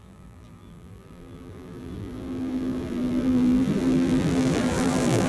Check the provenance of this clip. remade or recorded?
remade